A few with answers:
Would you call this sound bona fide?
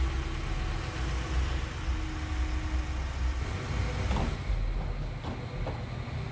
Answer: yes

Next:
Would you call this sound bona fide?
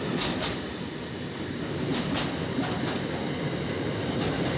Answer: yes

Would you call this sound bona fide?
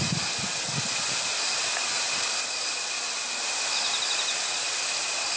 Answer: yes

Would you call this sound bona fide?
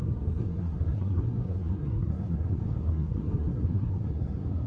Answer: no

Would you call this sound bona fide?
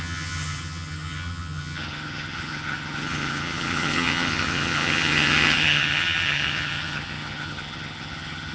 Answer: no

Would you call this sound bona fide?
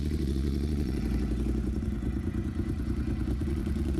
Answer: no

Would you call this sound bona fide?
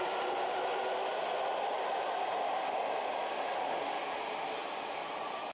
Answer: yes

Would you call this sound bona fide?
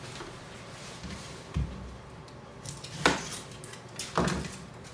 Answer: yes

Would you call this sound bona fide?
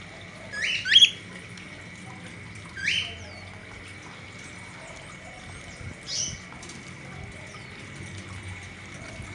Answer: yes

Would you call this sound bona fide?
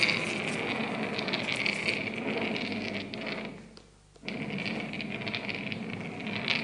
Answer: yes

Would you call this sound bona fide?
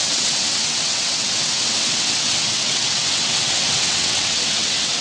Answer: no